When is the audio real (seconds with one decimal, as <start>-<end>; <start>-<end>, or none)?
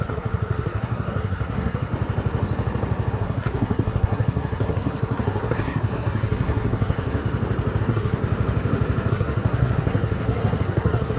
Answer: 1.9-3.1; 7.2-7.8; 8.2-9.1